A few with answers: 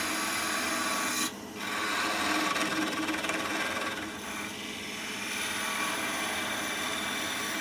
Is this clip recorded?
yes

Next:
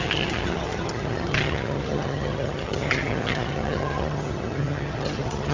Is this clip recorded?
no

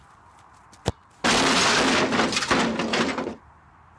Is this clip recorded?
yes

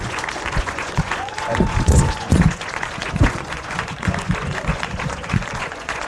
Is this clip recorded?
no